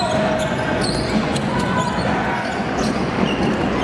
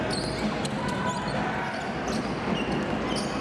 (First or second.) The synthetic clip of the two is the first